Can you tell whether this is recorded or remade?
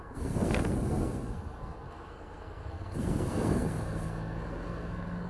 remade